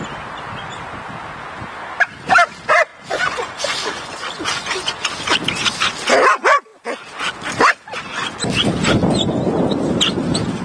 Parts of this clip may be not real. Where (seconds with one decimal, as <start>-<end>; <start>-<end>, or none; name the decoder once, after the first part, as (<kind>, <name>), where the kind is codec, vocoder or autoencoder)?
2.9-5.1 (vocoder, Vocos)